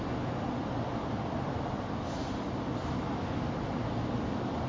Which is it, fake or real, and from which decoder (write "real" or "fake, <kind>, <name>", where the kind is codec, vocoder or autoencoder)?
real